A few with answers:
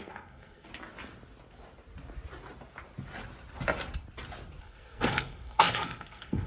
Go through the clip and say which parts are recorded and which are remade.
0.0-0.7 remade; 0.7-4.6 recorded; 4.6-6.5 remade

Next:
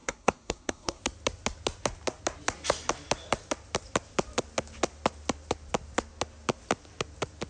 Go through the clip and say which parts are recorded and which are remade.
0.0-1.0 remade; 1.0-7.5 recorded

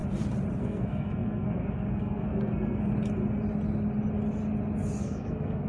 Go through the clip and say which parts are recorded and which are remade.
0.0-0.6 recorded; 0.6-2.9 remade; 2.9-5.0 recorded; 5.0-5.7 remade

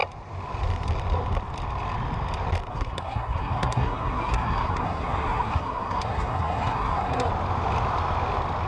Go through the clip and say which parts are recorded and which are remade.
0.0-2.7 recorded; 2.7-7.3 remade; 7.3-8.7 recorded